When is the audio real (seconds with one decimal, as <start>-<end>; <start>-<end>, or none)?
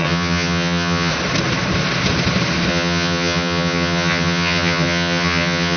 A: 1.1-2.7